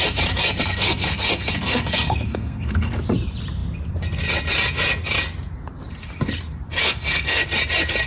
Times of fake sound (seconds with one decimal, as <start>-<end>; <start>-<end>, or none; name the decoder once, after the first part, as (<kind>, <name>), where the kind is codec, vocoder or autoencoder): 0.6-2.9 (codec, SNAC); 6.8-7.4